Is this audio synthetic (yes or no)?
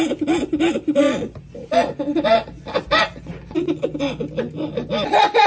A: no